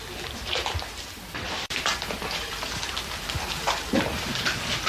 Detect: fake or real fake